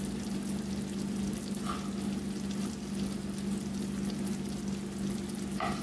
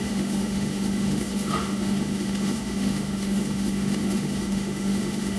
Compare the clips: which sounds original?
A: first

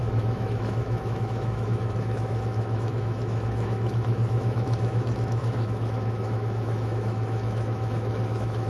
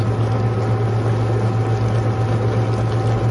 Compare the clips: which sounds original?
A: second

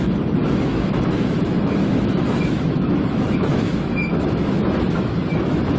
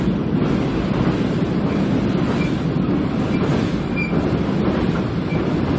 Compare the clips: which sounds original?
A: second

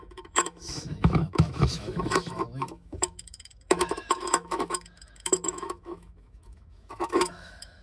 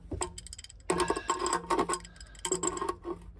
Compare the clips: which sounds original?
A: second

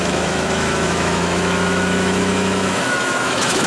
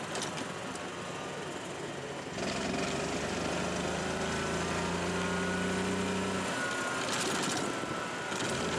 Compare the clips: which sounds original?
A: second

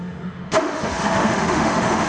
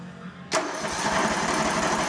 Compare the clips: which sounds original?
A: second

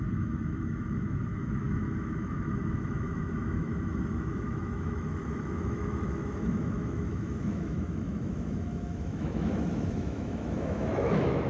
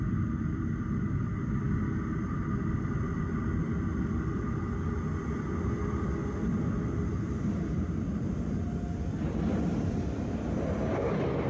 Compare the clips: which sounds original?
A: second